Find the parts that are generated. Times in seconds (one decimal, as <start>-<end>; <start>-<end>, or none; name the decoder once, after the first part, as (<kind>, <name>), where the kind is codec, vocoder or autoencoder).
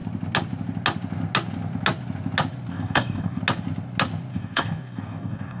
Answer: 2.7-3.4 (codec, DAC); 4.3-5.6